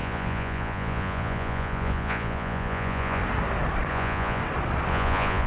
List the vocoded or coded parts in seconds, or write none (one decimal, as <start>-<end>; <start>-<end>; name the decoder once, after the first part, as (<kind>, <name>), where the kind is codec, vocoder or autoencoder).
0.0-3.2 (vocoder, Vocos); 3.9-4.4; 4.9-5.5